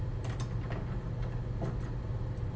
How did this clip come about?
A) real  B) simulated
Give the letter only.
A